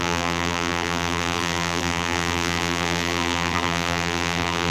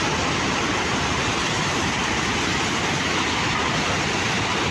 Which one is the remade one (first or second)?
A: first